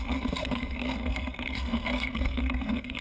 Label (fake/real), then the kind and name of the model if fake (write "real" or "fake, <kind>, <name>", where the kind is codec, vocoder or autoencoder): fake, codec, SNAC